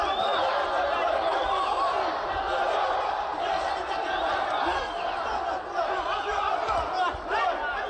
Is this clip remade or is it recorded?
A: recorded